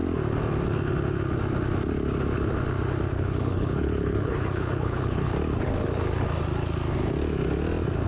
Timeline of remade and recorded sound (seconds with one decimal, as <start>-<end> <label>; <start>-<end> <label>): 0.0-3.1 recorded; 3.1-5.3 remade; 5.3-8.1 recorded